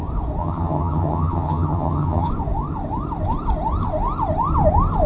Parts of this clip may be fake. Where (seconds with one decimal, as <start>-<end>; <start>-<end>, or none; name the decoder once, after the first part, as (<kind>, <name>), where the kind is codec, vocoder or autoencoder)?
0.4-2.3 (vocoder, HiFi-GAN)